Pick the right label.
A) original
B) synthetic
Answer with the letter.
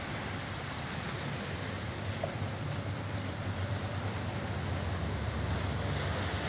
A